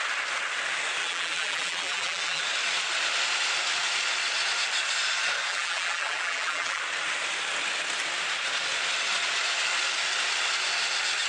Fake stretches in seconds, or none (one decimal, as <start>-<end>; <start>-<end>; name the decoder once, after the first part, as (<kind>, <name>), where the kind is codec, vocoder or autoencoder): 1.0-2.4 (vocoder, BigVGAN v2); 5.5-6.8